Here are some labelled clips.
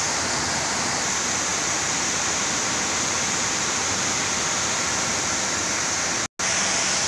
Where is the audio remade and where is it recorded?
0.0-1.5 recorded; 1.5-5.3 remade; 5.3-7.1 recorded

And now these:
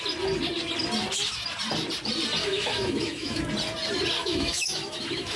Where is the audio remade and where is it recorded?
0.0-2.4 recorded; 2.4-3.4 remade; 3.4-4.2 recorded; 4.2-5.4 remade

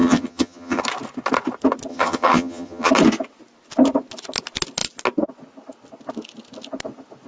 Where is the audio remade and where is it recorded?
0.0-0.8 remade; 0.8-1.9 recorded; 1.9-2.9 remade; 2.9-7.3 recorded